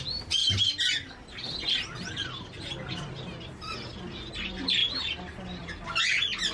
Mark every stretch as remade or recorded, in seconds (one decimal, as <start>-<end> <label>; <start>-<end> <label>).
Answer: 0.0-6.5 recorded

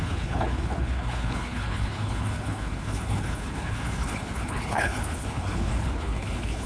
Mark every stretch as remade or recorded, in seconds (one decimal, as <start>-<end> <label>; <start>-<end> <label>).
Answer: 0.0-6.7 remade

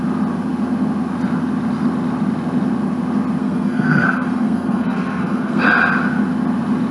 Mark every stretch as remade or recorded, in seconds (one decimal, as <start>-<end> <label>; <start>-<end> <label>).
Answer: 0.0-3.4 recorded; 3.4-5.6 remade; 5.6-6.9 recorded

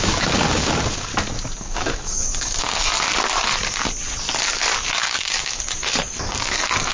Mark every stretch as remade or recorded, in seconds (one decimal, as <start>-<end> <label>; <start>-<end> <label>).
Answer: 0.0-1.1 remade; 1.1-1.6 recorded; 1.6-2.9 remade; 2.9-5.0 recorded; 5.0-6.9 remade

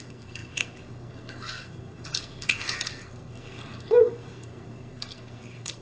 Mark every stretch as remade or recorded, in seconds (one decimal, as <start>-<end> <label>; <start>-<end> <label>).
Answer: 0.0-5.8 remade